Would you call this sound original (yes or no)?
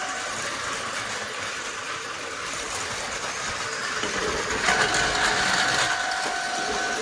yes